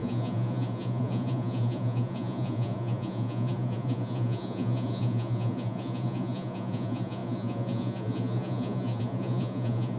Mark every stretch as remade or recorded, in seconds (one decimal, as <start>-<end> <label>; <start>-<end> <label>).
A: 0.0-10.0 remade